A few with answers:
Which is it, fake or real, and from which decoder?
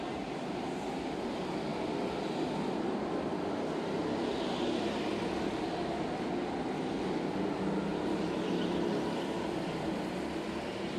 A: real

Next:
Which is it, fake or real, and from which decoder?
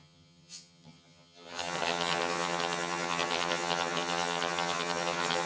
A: fake, vocoder, HiFi-GAN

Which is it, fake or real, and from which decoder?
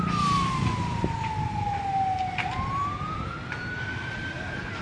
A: real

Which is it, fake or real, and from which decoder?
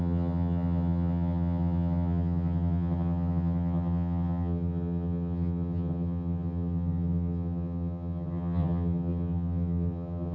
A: fake, vocoder, HiFi-GAN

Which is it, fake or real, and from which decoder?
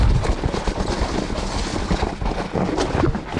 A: real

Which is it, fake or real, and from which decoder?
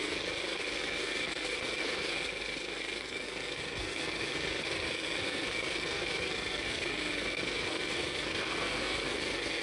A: fake, codec, SNAC